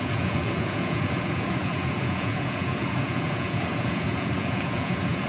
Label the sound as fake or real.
fake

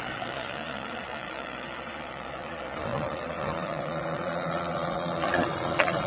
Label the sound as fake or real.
fake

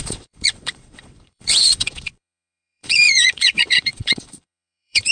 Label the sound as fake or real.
fake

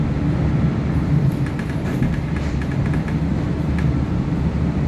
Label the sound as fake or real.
real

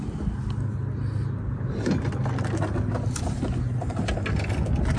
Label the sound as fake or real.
real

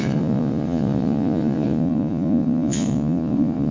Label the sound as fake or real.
fake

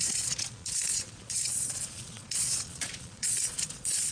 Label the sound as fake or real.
fake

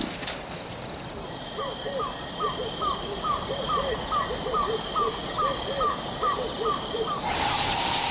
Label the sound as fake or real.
real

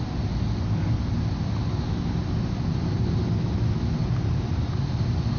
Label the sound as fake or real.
real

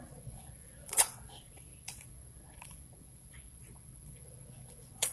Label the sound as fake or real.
fake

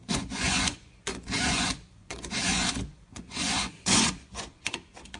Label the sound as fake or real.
fake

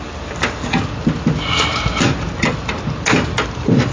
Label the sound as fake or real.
real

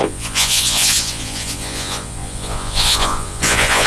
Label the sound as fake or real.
fake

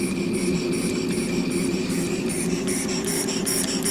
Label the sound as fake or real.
real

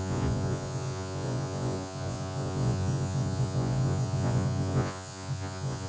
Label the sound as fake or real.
fake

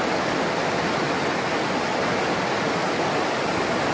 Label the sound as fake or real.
real